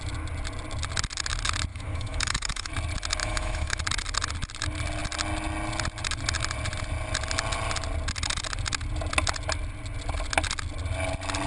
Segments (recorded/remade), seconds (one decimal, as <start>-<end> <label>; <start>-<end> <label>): 0.0-1.7 recorded; 1.7-2.7 remade; 2.7-3.2 recorded; 3.2-3.8 remade; 3.8-11.5 recorded